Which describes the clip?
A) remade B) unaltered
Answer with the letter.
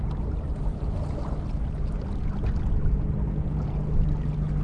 B